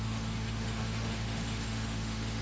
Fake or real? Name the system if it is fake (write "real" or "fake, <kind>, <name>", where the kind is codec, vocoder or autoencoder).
fake, autoencoder, DAC-VAE